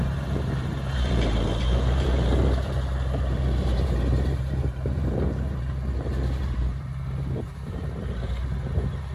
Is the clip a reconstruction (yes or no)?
yes